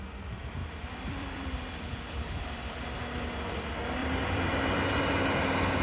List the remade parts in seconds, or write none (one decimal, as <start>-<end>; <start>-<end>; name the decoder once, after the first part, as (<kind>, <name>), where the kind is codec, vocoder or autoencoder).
0.6-2.8 (vocoder, BigVGAN v2); 4.0-4.9